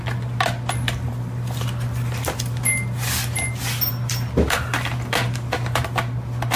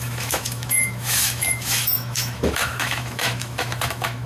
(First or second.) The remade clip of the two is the second